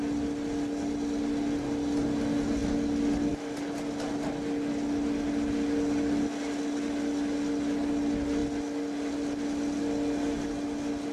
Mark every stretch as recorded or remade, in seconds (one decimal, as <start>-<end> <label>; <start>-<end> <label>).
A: 0.0-11.1 recorded

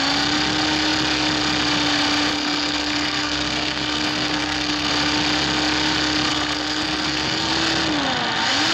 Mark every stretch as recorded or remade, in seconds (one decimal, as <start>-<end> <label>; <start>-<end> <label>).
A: 0.0-2.3 recorded; 2.3-4.9 remade; 4.9-6.3 recorded; 6.3-7.5 remade; 7.5-8.7 recorded

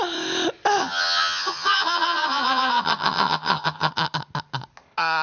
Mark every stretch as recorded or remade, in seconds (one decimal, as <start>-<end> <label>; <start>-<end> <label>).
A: 0.0-0.8 recorded; 0.8-3.9 remade; 3.9-5.2 recorded